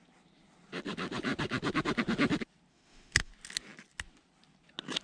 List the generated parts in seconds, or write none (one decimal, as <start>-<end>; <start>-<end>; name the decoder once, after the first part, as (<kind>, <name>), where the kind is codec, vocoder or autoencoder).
2.7-3.3 (autoencoder, DAC-VAE)